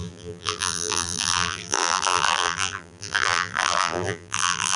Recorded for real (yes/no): no